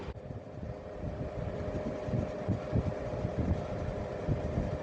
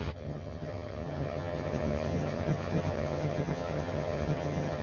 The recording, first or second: first